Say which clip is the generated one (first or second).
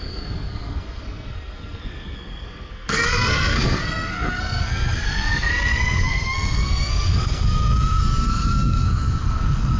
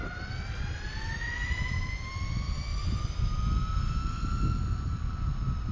first